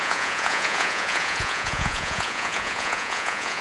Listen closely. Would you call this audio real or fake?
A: fake